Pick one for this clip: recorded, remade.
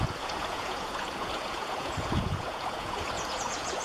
remade